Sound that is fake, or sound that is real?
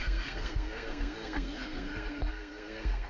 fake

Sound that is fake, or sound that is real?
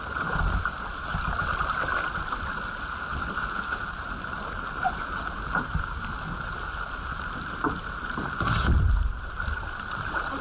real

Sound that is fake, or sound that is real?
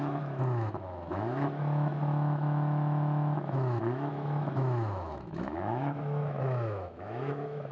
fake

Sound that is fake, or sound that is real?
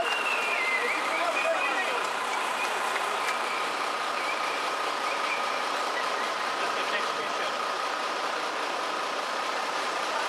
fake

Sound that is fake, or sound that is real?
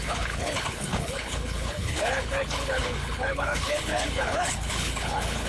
fake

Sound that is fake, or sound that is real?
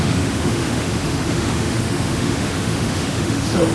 fake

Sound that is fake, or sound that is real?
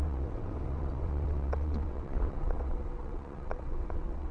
fake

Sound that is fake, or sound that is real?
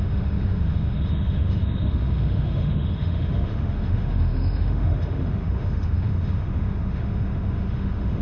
fake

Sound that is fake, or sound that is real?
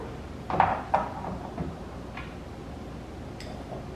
real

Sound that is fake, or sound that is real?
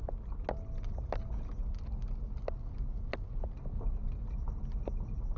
real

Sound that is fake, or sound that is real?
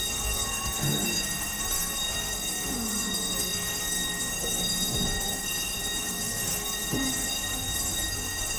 fake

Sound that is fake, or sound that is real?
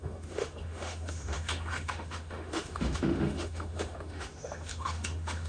fake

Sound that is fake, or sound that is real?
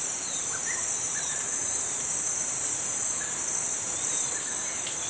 fake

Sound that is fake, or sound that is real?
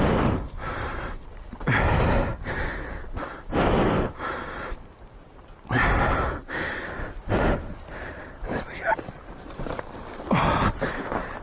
fake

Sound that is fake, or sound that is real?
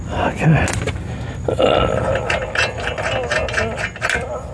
real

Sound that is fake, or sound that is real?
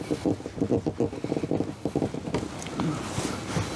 real